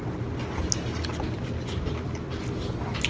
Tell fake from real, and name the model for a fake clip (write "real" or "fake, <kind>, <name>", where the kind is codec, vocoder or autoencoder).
real